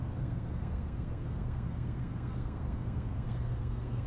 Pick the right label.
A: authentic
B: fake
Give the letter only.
B